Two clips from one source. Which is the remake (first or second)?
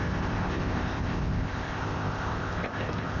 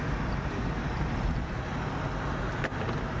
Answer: first